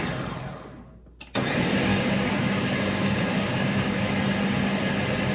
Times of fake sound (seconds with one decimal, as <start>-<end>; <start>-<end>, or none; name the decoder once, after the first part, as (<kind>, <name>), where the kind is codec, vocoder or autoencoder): 1.9-4.2 (codec, DAC)